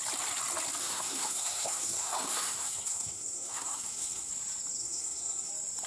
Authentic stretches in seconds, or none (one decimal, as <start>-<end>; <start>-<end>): 0.0-0.8; 4.3-4.8; 5.5-5.9